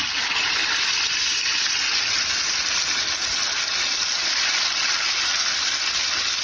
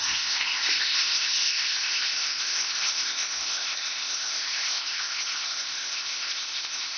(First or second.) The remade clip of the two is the second